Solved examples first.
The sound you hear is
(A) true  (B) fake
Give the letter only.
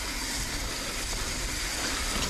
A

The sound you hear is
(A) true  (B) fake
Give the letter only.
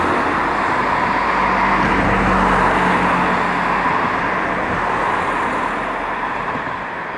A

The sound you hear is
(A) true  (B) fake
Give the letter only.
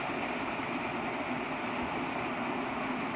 A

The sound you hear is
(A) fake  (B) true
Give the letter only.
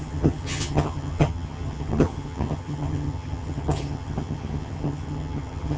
A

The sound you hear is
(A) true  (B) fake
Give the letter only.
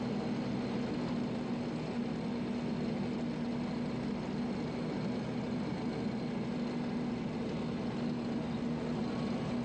A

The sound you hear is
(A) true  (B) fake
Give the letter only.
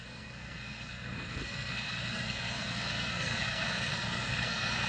B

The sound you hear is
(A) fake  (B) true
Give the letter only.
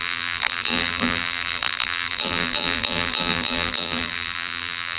A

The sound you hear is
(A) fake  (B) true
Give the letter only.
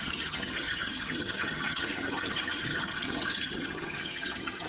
A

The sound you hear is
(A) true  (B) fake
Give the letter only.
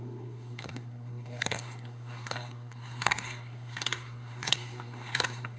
B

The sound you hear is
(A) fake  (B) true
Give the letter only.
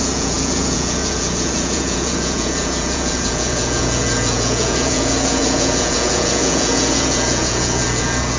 A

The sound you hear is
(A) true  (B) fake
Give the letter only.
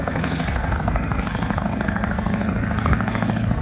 B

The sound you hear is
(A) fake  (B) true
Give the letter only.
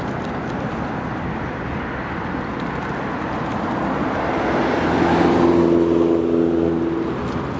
B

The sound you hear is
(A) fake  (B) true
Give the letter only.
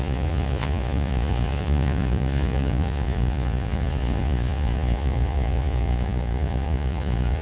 A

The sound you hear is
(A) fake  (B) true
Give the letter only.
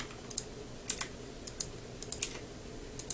B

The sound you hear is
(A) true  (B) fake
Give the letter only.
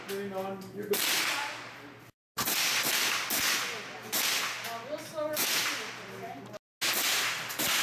A